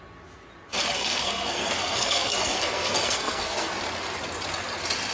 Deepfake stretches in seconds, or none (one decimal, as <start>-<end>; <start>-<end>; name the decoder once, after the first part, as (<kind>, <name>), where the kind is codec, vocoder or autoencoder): 0.8-3.7 (codec, SNAC)